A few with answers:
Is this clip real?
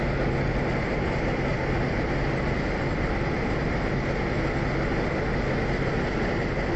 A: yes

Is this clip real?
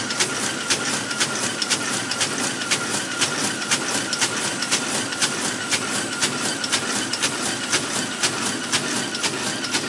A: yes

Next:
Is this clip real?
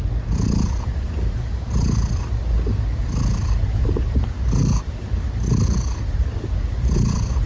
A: yes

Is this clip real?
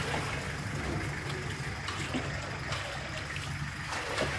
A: yes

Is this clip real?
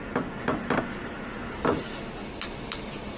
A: yes